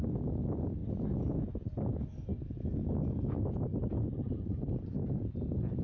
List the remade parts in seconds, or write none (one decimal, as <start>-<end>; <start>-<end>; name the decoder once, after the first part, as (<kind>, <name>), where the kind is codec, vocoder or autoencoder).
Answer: none